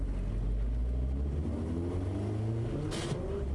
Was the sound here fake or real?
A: real